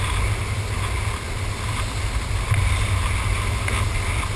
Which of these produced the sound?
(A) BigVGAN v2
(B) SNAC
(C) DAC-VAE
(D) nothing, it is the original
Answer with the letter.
D